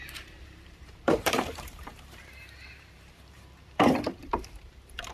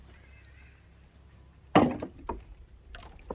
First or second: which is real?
second